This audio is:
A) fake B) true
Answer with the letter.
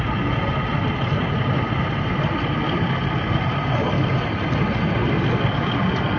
B